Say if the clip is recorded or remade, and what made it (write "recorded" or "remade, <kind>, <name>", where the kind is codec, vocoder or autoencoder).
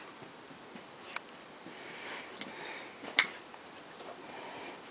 remade, vocoder, BigVGAN v2